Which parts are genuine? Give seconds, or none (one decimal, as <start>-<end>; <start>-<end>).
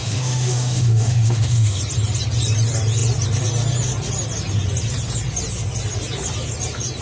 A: 1.8-7.0